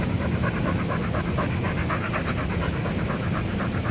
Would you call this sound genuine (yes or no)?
yes